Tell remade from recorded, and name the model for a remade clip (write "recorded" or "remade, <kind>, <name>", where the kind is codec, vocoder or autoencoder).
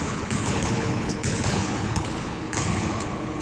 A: remade, codec, HILCodec